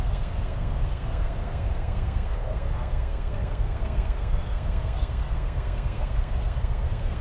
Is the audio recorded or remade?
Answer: remade